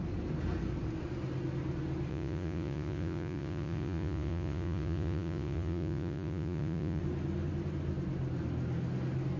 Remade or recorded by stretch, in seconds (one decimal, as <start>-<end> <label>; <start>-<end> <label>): 0.0-2.1 recorded; 2.1-7.0 remade; 7.0-9.4 recorded